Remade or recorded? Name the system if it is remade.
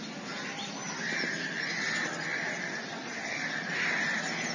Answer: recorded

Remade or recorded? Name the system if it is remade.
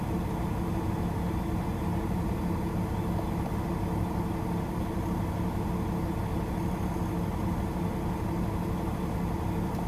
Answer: recorded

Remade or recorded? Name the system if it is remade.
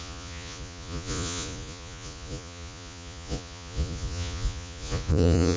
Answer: remade, vocoder, Vocos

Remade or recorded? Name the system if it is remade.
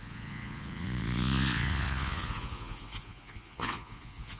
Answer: remade, vocoder, Vocos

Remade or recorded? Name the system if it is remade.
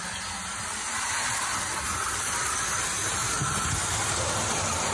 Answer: recorded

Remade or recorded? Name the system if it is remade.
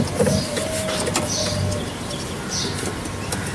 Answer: recorded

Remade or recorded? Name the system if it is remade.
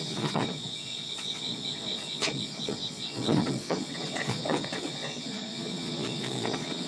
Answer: remade, vocoder, Vocos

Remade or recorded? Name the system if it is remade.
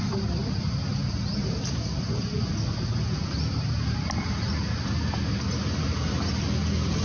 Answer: recorded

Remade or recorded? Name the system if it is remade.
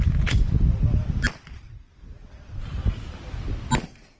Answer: recorded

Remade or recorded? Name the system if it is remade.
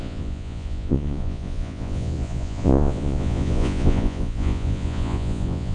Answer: remade, vocoder, Vocos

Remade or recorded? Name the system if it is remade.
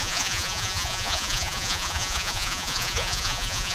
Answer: remade, vocoder, Vocos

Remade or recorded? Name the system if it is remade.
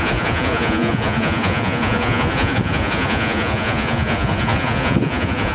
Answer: remade, vocoder, Vocos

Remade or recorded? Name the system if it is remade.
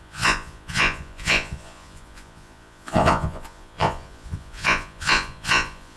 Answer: remade, vocoder, Vocos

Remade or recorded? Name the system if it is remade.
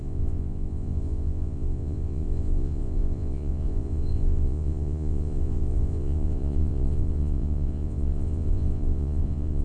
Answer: remade, vocoder, Vocos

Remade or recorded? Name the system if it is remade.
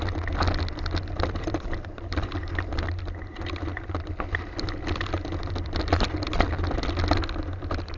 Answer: recorded